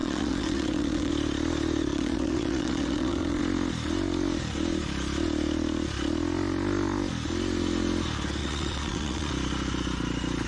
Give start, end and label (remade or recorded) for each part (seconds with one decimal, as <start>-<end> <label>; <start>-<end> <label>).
0.0-1.1 remade; 1.1-1.9 recorded; 1.9-3.4 remade; 3.4-8.4 recorded; 8.4-9.3 remade; 9.3-10.5 recorded